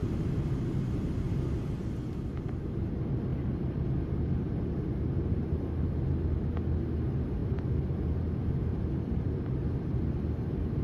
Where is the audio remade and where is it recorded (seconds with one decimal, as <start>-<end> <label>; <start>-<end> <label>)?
0.0-0.5 remade; 0.5-8.7 recorded; 8.7-10.2 remade; 10.2-10.8 recorded